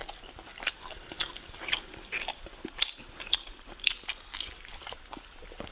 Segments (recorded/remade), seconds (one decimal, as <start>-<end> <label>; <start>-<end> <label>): 0.0-0.7 recorded; 0.7-5.7 remade